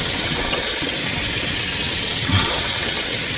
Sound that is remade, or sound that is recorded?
remade